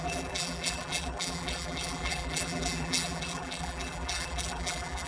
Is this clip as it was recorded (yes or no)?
no